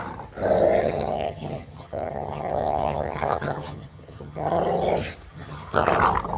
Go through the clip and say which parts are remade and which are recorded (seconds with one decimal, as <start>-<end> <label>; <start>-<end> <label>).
0.0-0.8 recorded; 0.8-4.6 remade; 4.6-5.3 recorded; 5.3-5.9 remade; 5.9-6.4 recorded